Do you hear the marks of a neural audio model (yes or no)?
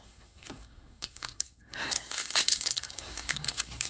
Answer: yes